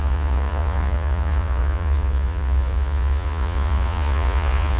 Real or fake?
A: fake